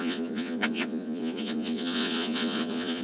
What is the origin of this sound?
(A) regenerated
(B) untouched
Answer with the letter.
A